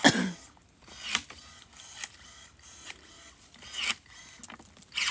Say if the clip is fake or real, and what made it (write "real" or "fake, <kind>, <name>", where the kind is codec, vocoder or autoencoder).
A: real